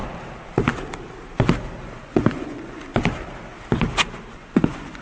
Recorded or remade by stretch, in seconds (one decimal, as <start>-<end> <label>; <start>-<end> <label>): 0.0-2.0 recorded; 2.0-2.9 remade; 2.9-4.3 recorded; 4.3-5.0 remade

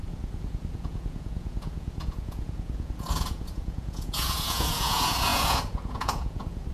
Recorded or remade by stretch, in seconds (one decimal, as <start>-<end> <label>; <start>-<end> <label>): 0.0-6.7 remade